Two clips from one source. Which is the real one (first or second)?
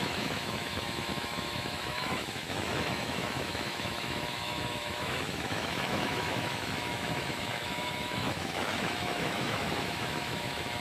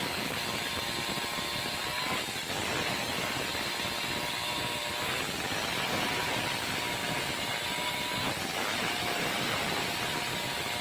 second